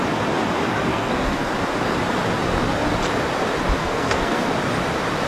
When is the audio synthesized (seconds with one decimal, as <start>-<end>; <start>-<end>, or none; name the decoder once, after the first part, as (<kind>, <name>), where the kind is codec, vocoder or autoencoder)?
0.9-1.5 (codec, SNAC); 3.8-4.5